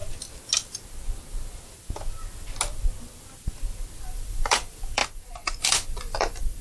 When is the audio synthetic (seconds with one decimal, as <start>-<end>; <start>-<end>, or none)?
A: 4.0-6.6